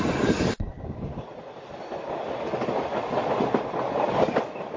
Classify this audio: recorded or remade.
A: recorded